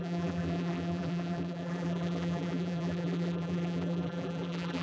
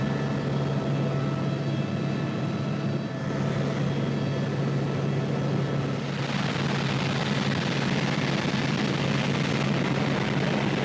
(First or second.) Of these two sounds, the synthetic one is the first